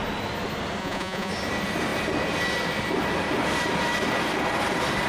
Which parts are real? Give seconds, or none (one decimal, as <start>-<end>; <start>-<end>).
0.0-0.8; 1.3-5.1